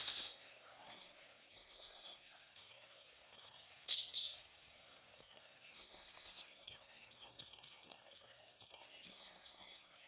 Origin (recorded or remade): remade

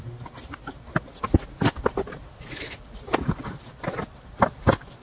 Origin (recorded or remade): remade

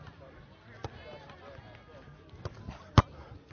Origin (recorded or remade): recorded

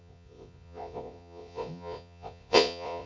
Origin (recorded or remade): remade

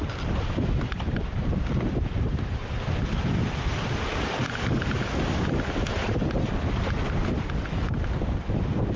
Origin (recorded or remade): remade